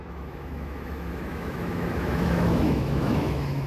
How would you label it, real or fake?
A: fake